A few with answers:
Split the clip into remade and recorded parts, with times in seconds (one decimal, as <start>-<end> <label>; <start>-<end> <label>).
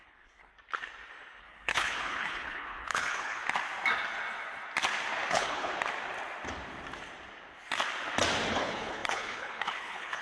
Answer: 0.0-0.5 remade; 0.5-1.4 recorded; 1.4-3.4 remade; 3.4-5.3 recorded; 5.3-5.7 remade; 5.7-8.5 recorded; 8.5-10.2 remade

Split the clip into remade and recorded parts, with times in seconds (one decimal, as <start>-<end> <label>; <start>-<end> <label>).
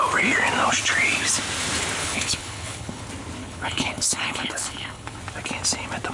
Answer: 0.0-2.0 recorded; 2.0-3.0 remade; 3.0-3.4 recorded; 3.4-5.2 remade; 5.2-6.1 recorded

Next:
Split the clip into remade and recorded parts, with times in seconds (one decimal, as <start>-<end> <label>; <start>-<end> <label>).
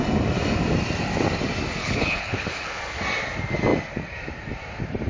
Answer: 0.0-1.8 recorded; 1.8-2.8 remade; 2.8-5.1 recorded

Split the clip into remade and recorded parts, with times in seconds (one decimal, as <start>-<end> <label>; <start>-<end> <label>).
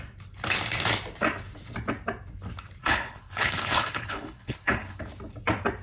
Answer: 0.0-2.8 recorded; 2.8-5.0 remade; 5.0-5.8 recorded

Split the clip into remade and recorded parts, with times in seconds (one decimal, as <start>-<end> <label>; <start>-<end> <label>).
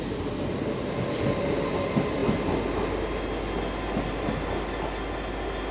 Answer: 0.0-5.7 recorded